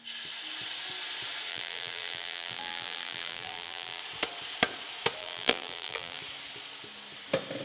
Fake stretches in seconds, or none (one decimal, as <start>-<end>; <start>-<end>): 1.5-4.0; 5.2-6.2